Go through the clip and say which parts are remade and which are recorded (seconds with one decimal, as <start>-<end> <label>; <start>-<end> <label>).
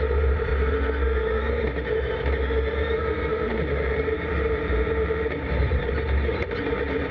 0.0-0.5 remade; 0.5-2.7 recorded; 2.7-7.1 remade